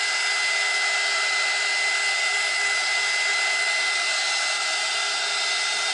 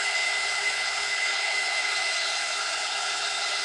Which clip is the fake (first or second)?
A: second